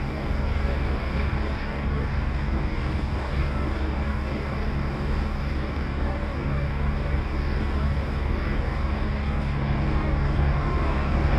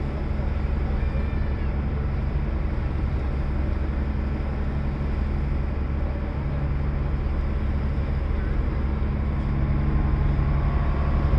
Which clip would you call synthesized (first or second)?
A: first